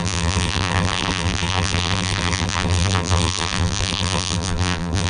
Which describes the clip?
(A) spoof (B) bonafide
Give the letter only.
A